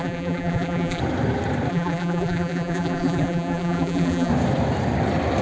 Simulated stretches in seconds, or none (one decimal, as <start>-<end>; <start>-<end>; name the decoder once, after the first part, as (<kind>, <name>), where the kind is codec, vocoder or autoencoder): 0.0-1.0 (vocoder, BigVGAN v2); 1.7-4.3

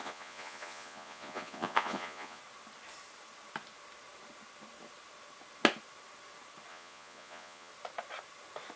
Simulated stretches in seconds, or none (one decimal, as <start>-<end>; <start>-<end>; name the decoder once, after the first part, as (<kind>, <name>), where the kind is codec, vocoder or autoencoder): 0.0-2.4 (vocoder, Vocos); 6.7-7.7

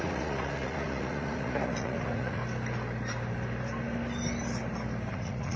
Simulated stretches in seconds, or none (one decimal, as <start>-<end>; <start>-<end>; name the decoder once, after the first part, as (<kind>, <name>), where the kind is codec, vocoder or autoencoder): 0.0-2.4 (vocoder, Vocos); 5.1-5.6

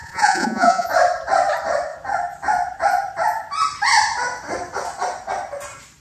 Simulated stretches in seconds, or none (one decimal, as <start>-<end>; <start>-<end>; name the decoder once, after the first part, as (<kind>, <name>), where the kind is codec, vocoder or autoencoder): 0.0-0.9 (vocoder, Vocos)

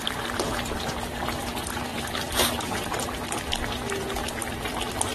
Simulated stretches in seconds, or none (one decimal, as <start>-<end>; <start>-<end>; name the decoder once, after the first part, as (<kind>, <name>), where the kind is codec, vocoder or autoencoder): 0.0-5.1 (vocoder, BigVGAN v2)

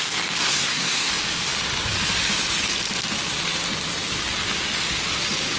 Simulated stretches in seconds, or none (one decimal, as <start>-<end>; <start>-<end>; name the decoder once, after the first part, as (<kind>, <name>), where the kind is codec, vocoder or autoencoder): 0.4-1.1 (codec, SNAC)

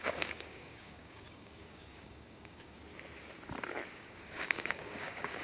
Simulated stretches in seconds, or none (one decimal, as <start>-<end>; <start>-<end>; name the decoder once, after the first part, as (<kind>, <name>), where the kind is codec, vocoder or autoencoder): 0.0-2.8 (codec, DAC); 3.9-5.4